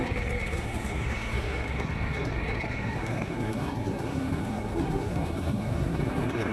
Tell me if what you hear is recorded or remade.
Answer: remade